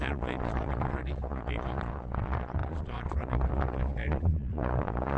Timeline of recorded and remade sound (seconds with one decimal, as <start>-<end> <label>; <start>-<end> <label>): 0.0-5.2 remade